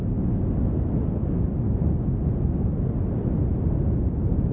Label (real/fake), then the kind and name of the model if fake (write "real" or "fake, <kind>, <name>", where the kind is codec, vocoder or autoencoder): real